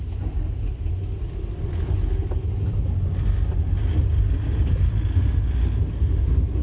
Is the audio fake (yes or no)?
no